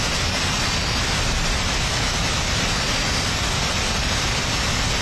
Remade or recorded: recorded